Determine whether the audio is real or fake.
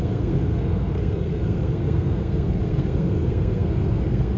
fake